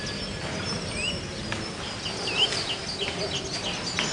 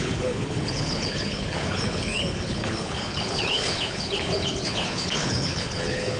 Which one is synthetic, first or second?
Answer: second